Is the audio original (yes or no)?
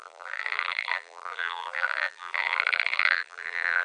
no